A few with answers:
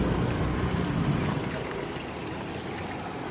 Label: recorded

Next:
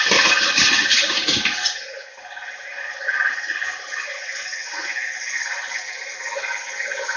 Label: recorded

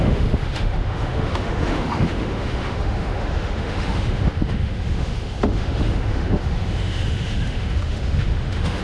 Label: remade